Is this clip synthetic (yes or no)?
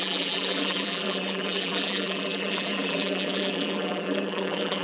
yes